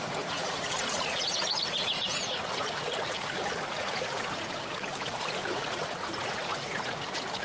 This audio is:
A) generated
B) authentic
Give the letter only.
A